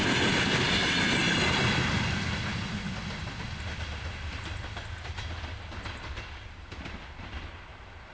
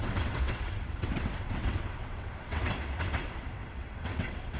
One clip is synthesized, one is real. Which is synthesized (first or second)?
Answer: second